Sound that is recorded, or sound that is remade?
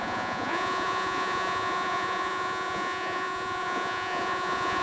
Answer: remade